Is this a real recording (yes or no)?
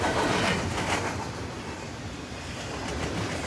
yes